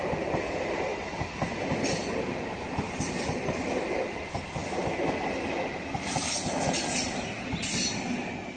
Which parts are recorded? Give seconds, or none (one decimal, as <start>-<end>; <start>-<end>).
0.0-8.6